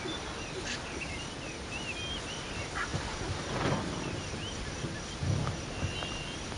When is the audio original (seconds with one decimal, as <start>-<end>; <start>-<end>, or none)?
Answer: 0.0-6.6